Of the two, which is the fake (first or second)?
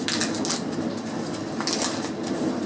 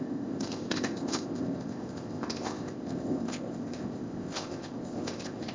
second